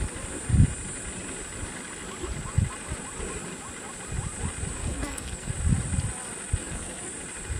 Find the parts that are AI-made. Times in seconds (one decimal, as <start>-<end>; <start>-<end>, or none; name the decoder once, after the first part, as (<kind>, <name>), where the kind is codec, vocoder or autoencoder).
4.8-5.5 (codec, SNAC); 6.6-7.1